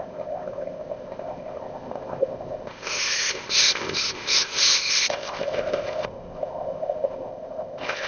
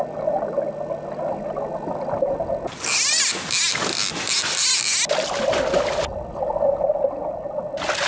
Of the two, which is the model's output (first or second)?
first